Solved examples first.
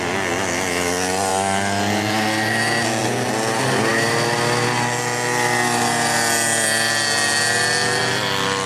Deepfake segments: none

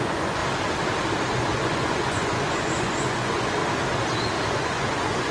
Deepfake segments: 0.0-0.4 (vocoder, Vocos); 1.3-3.6; 4.5-5.3